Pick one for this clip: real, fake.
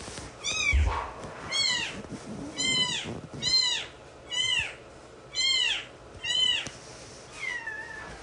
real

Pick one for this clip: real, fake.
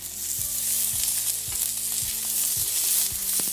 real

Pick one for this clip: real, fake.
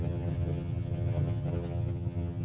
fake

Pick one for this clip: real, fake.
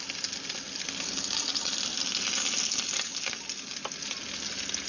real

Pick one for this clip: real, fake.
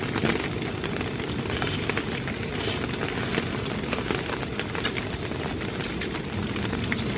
real